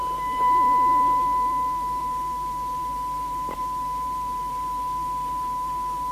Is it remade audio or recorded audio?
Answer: remade